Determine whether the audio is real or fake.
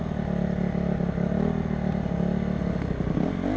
real